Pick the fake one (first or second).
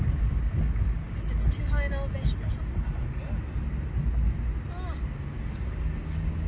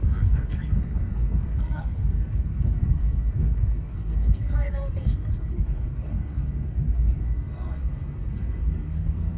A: second